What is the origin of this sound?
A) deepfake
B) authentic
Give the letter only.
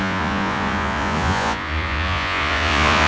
A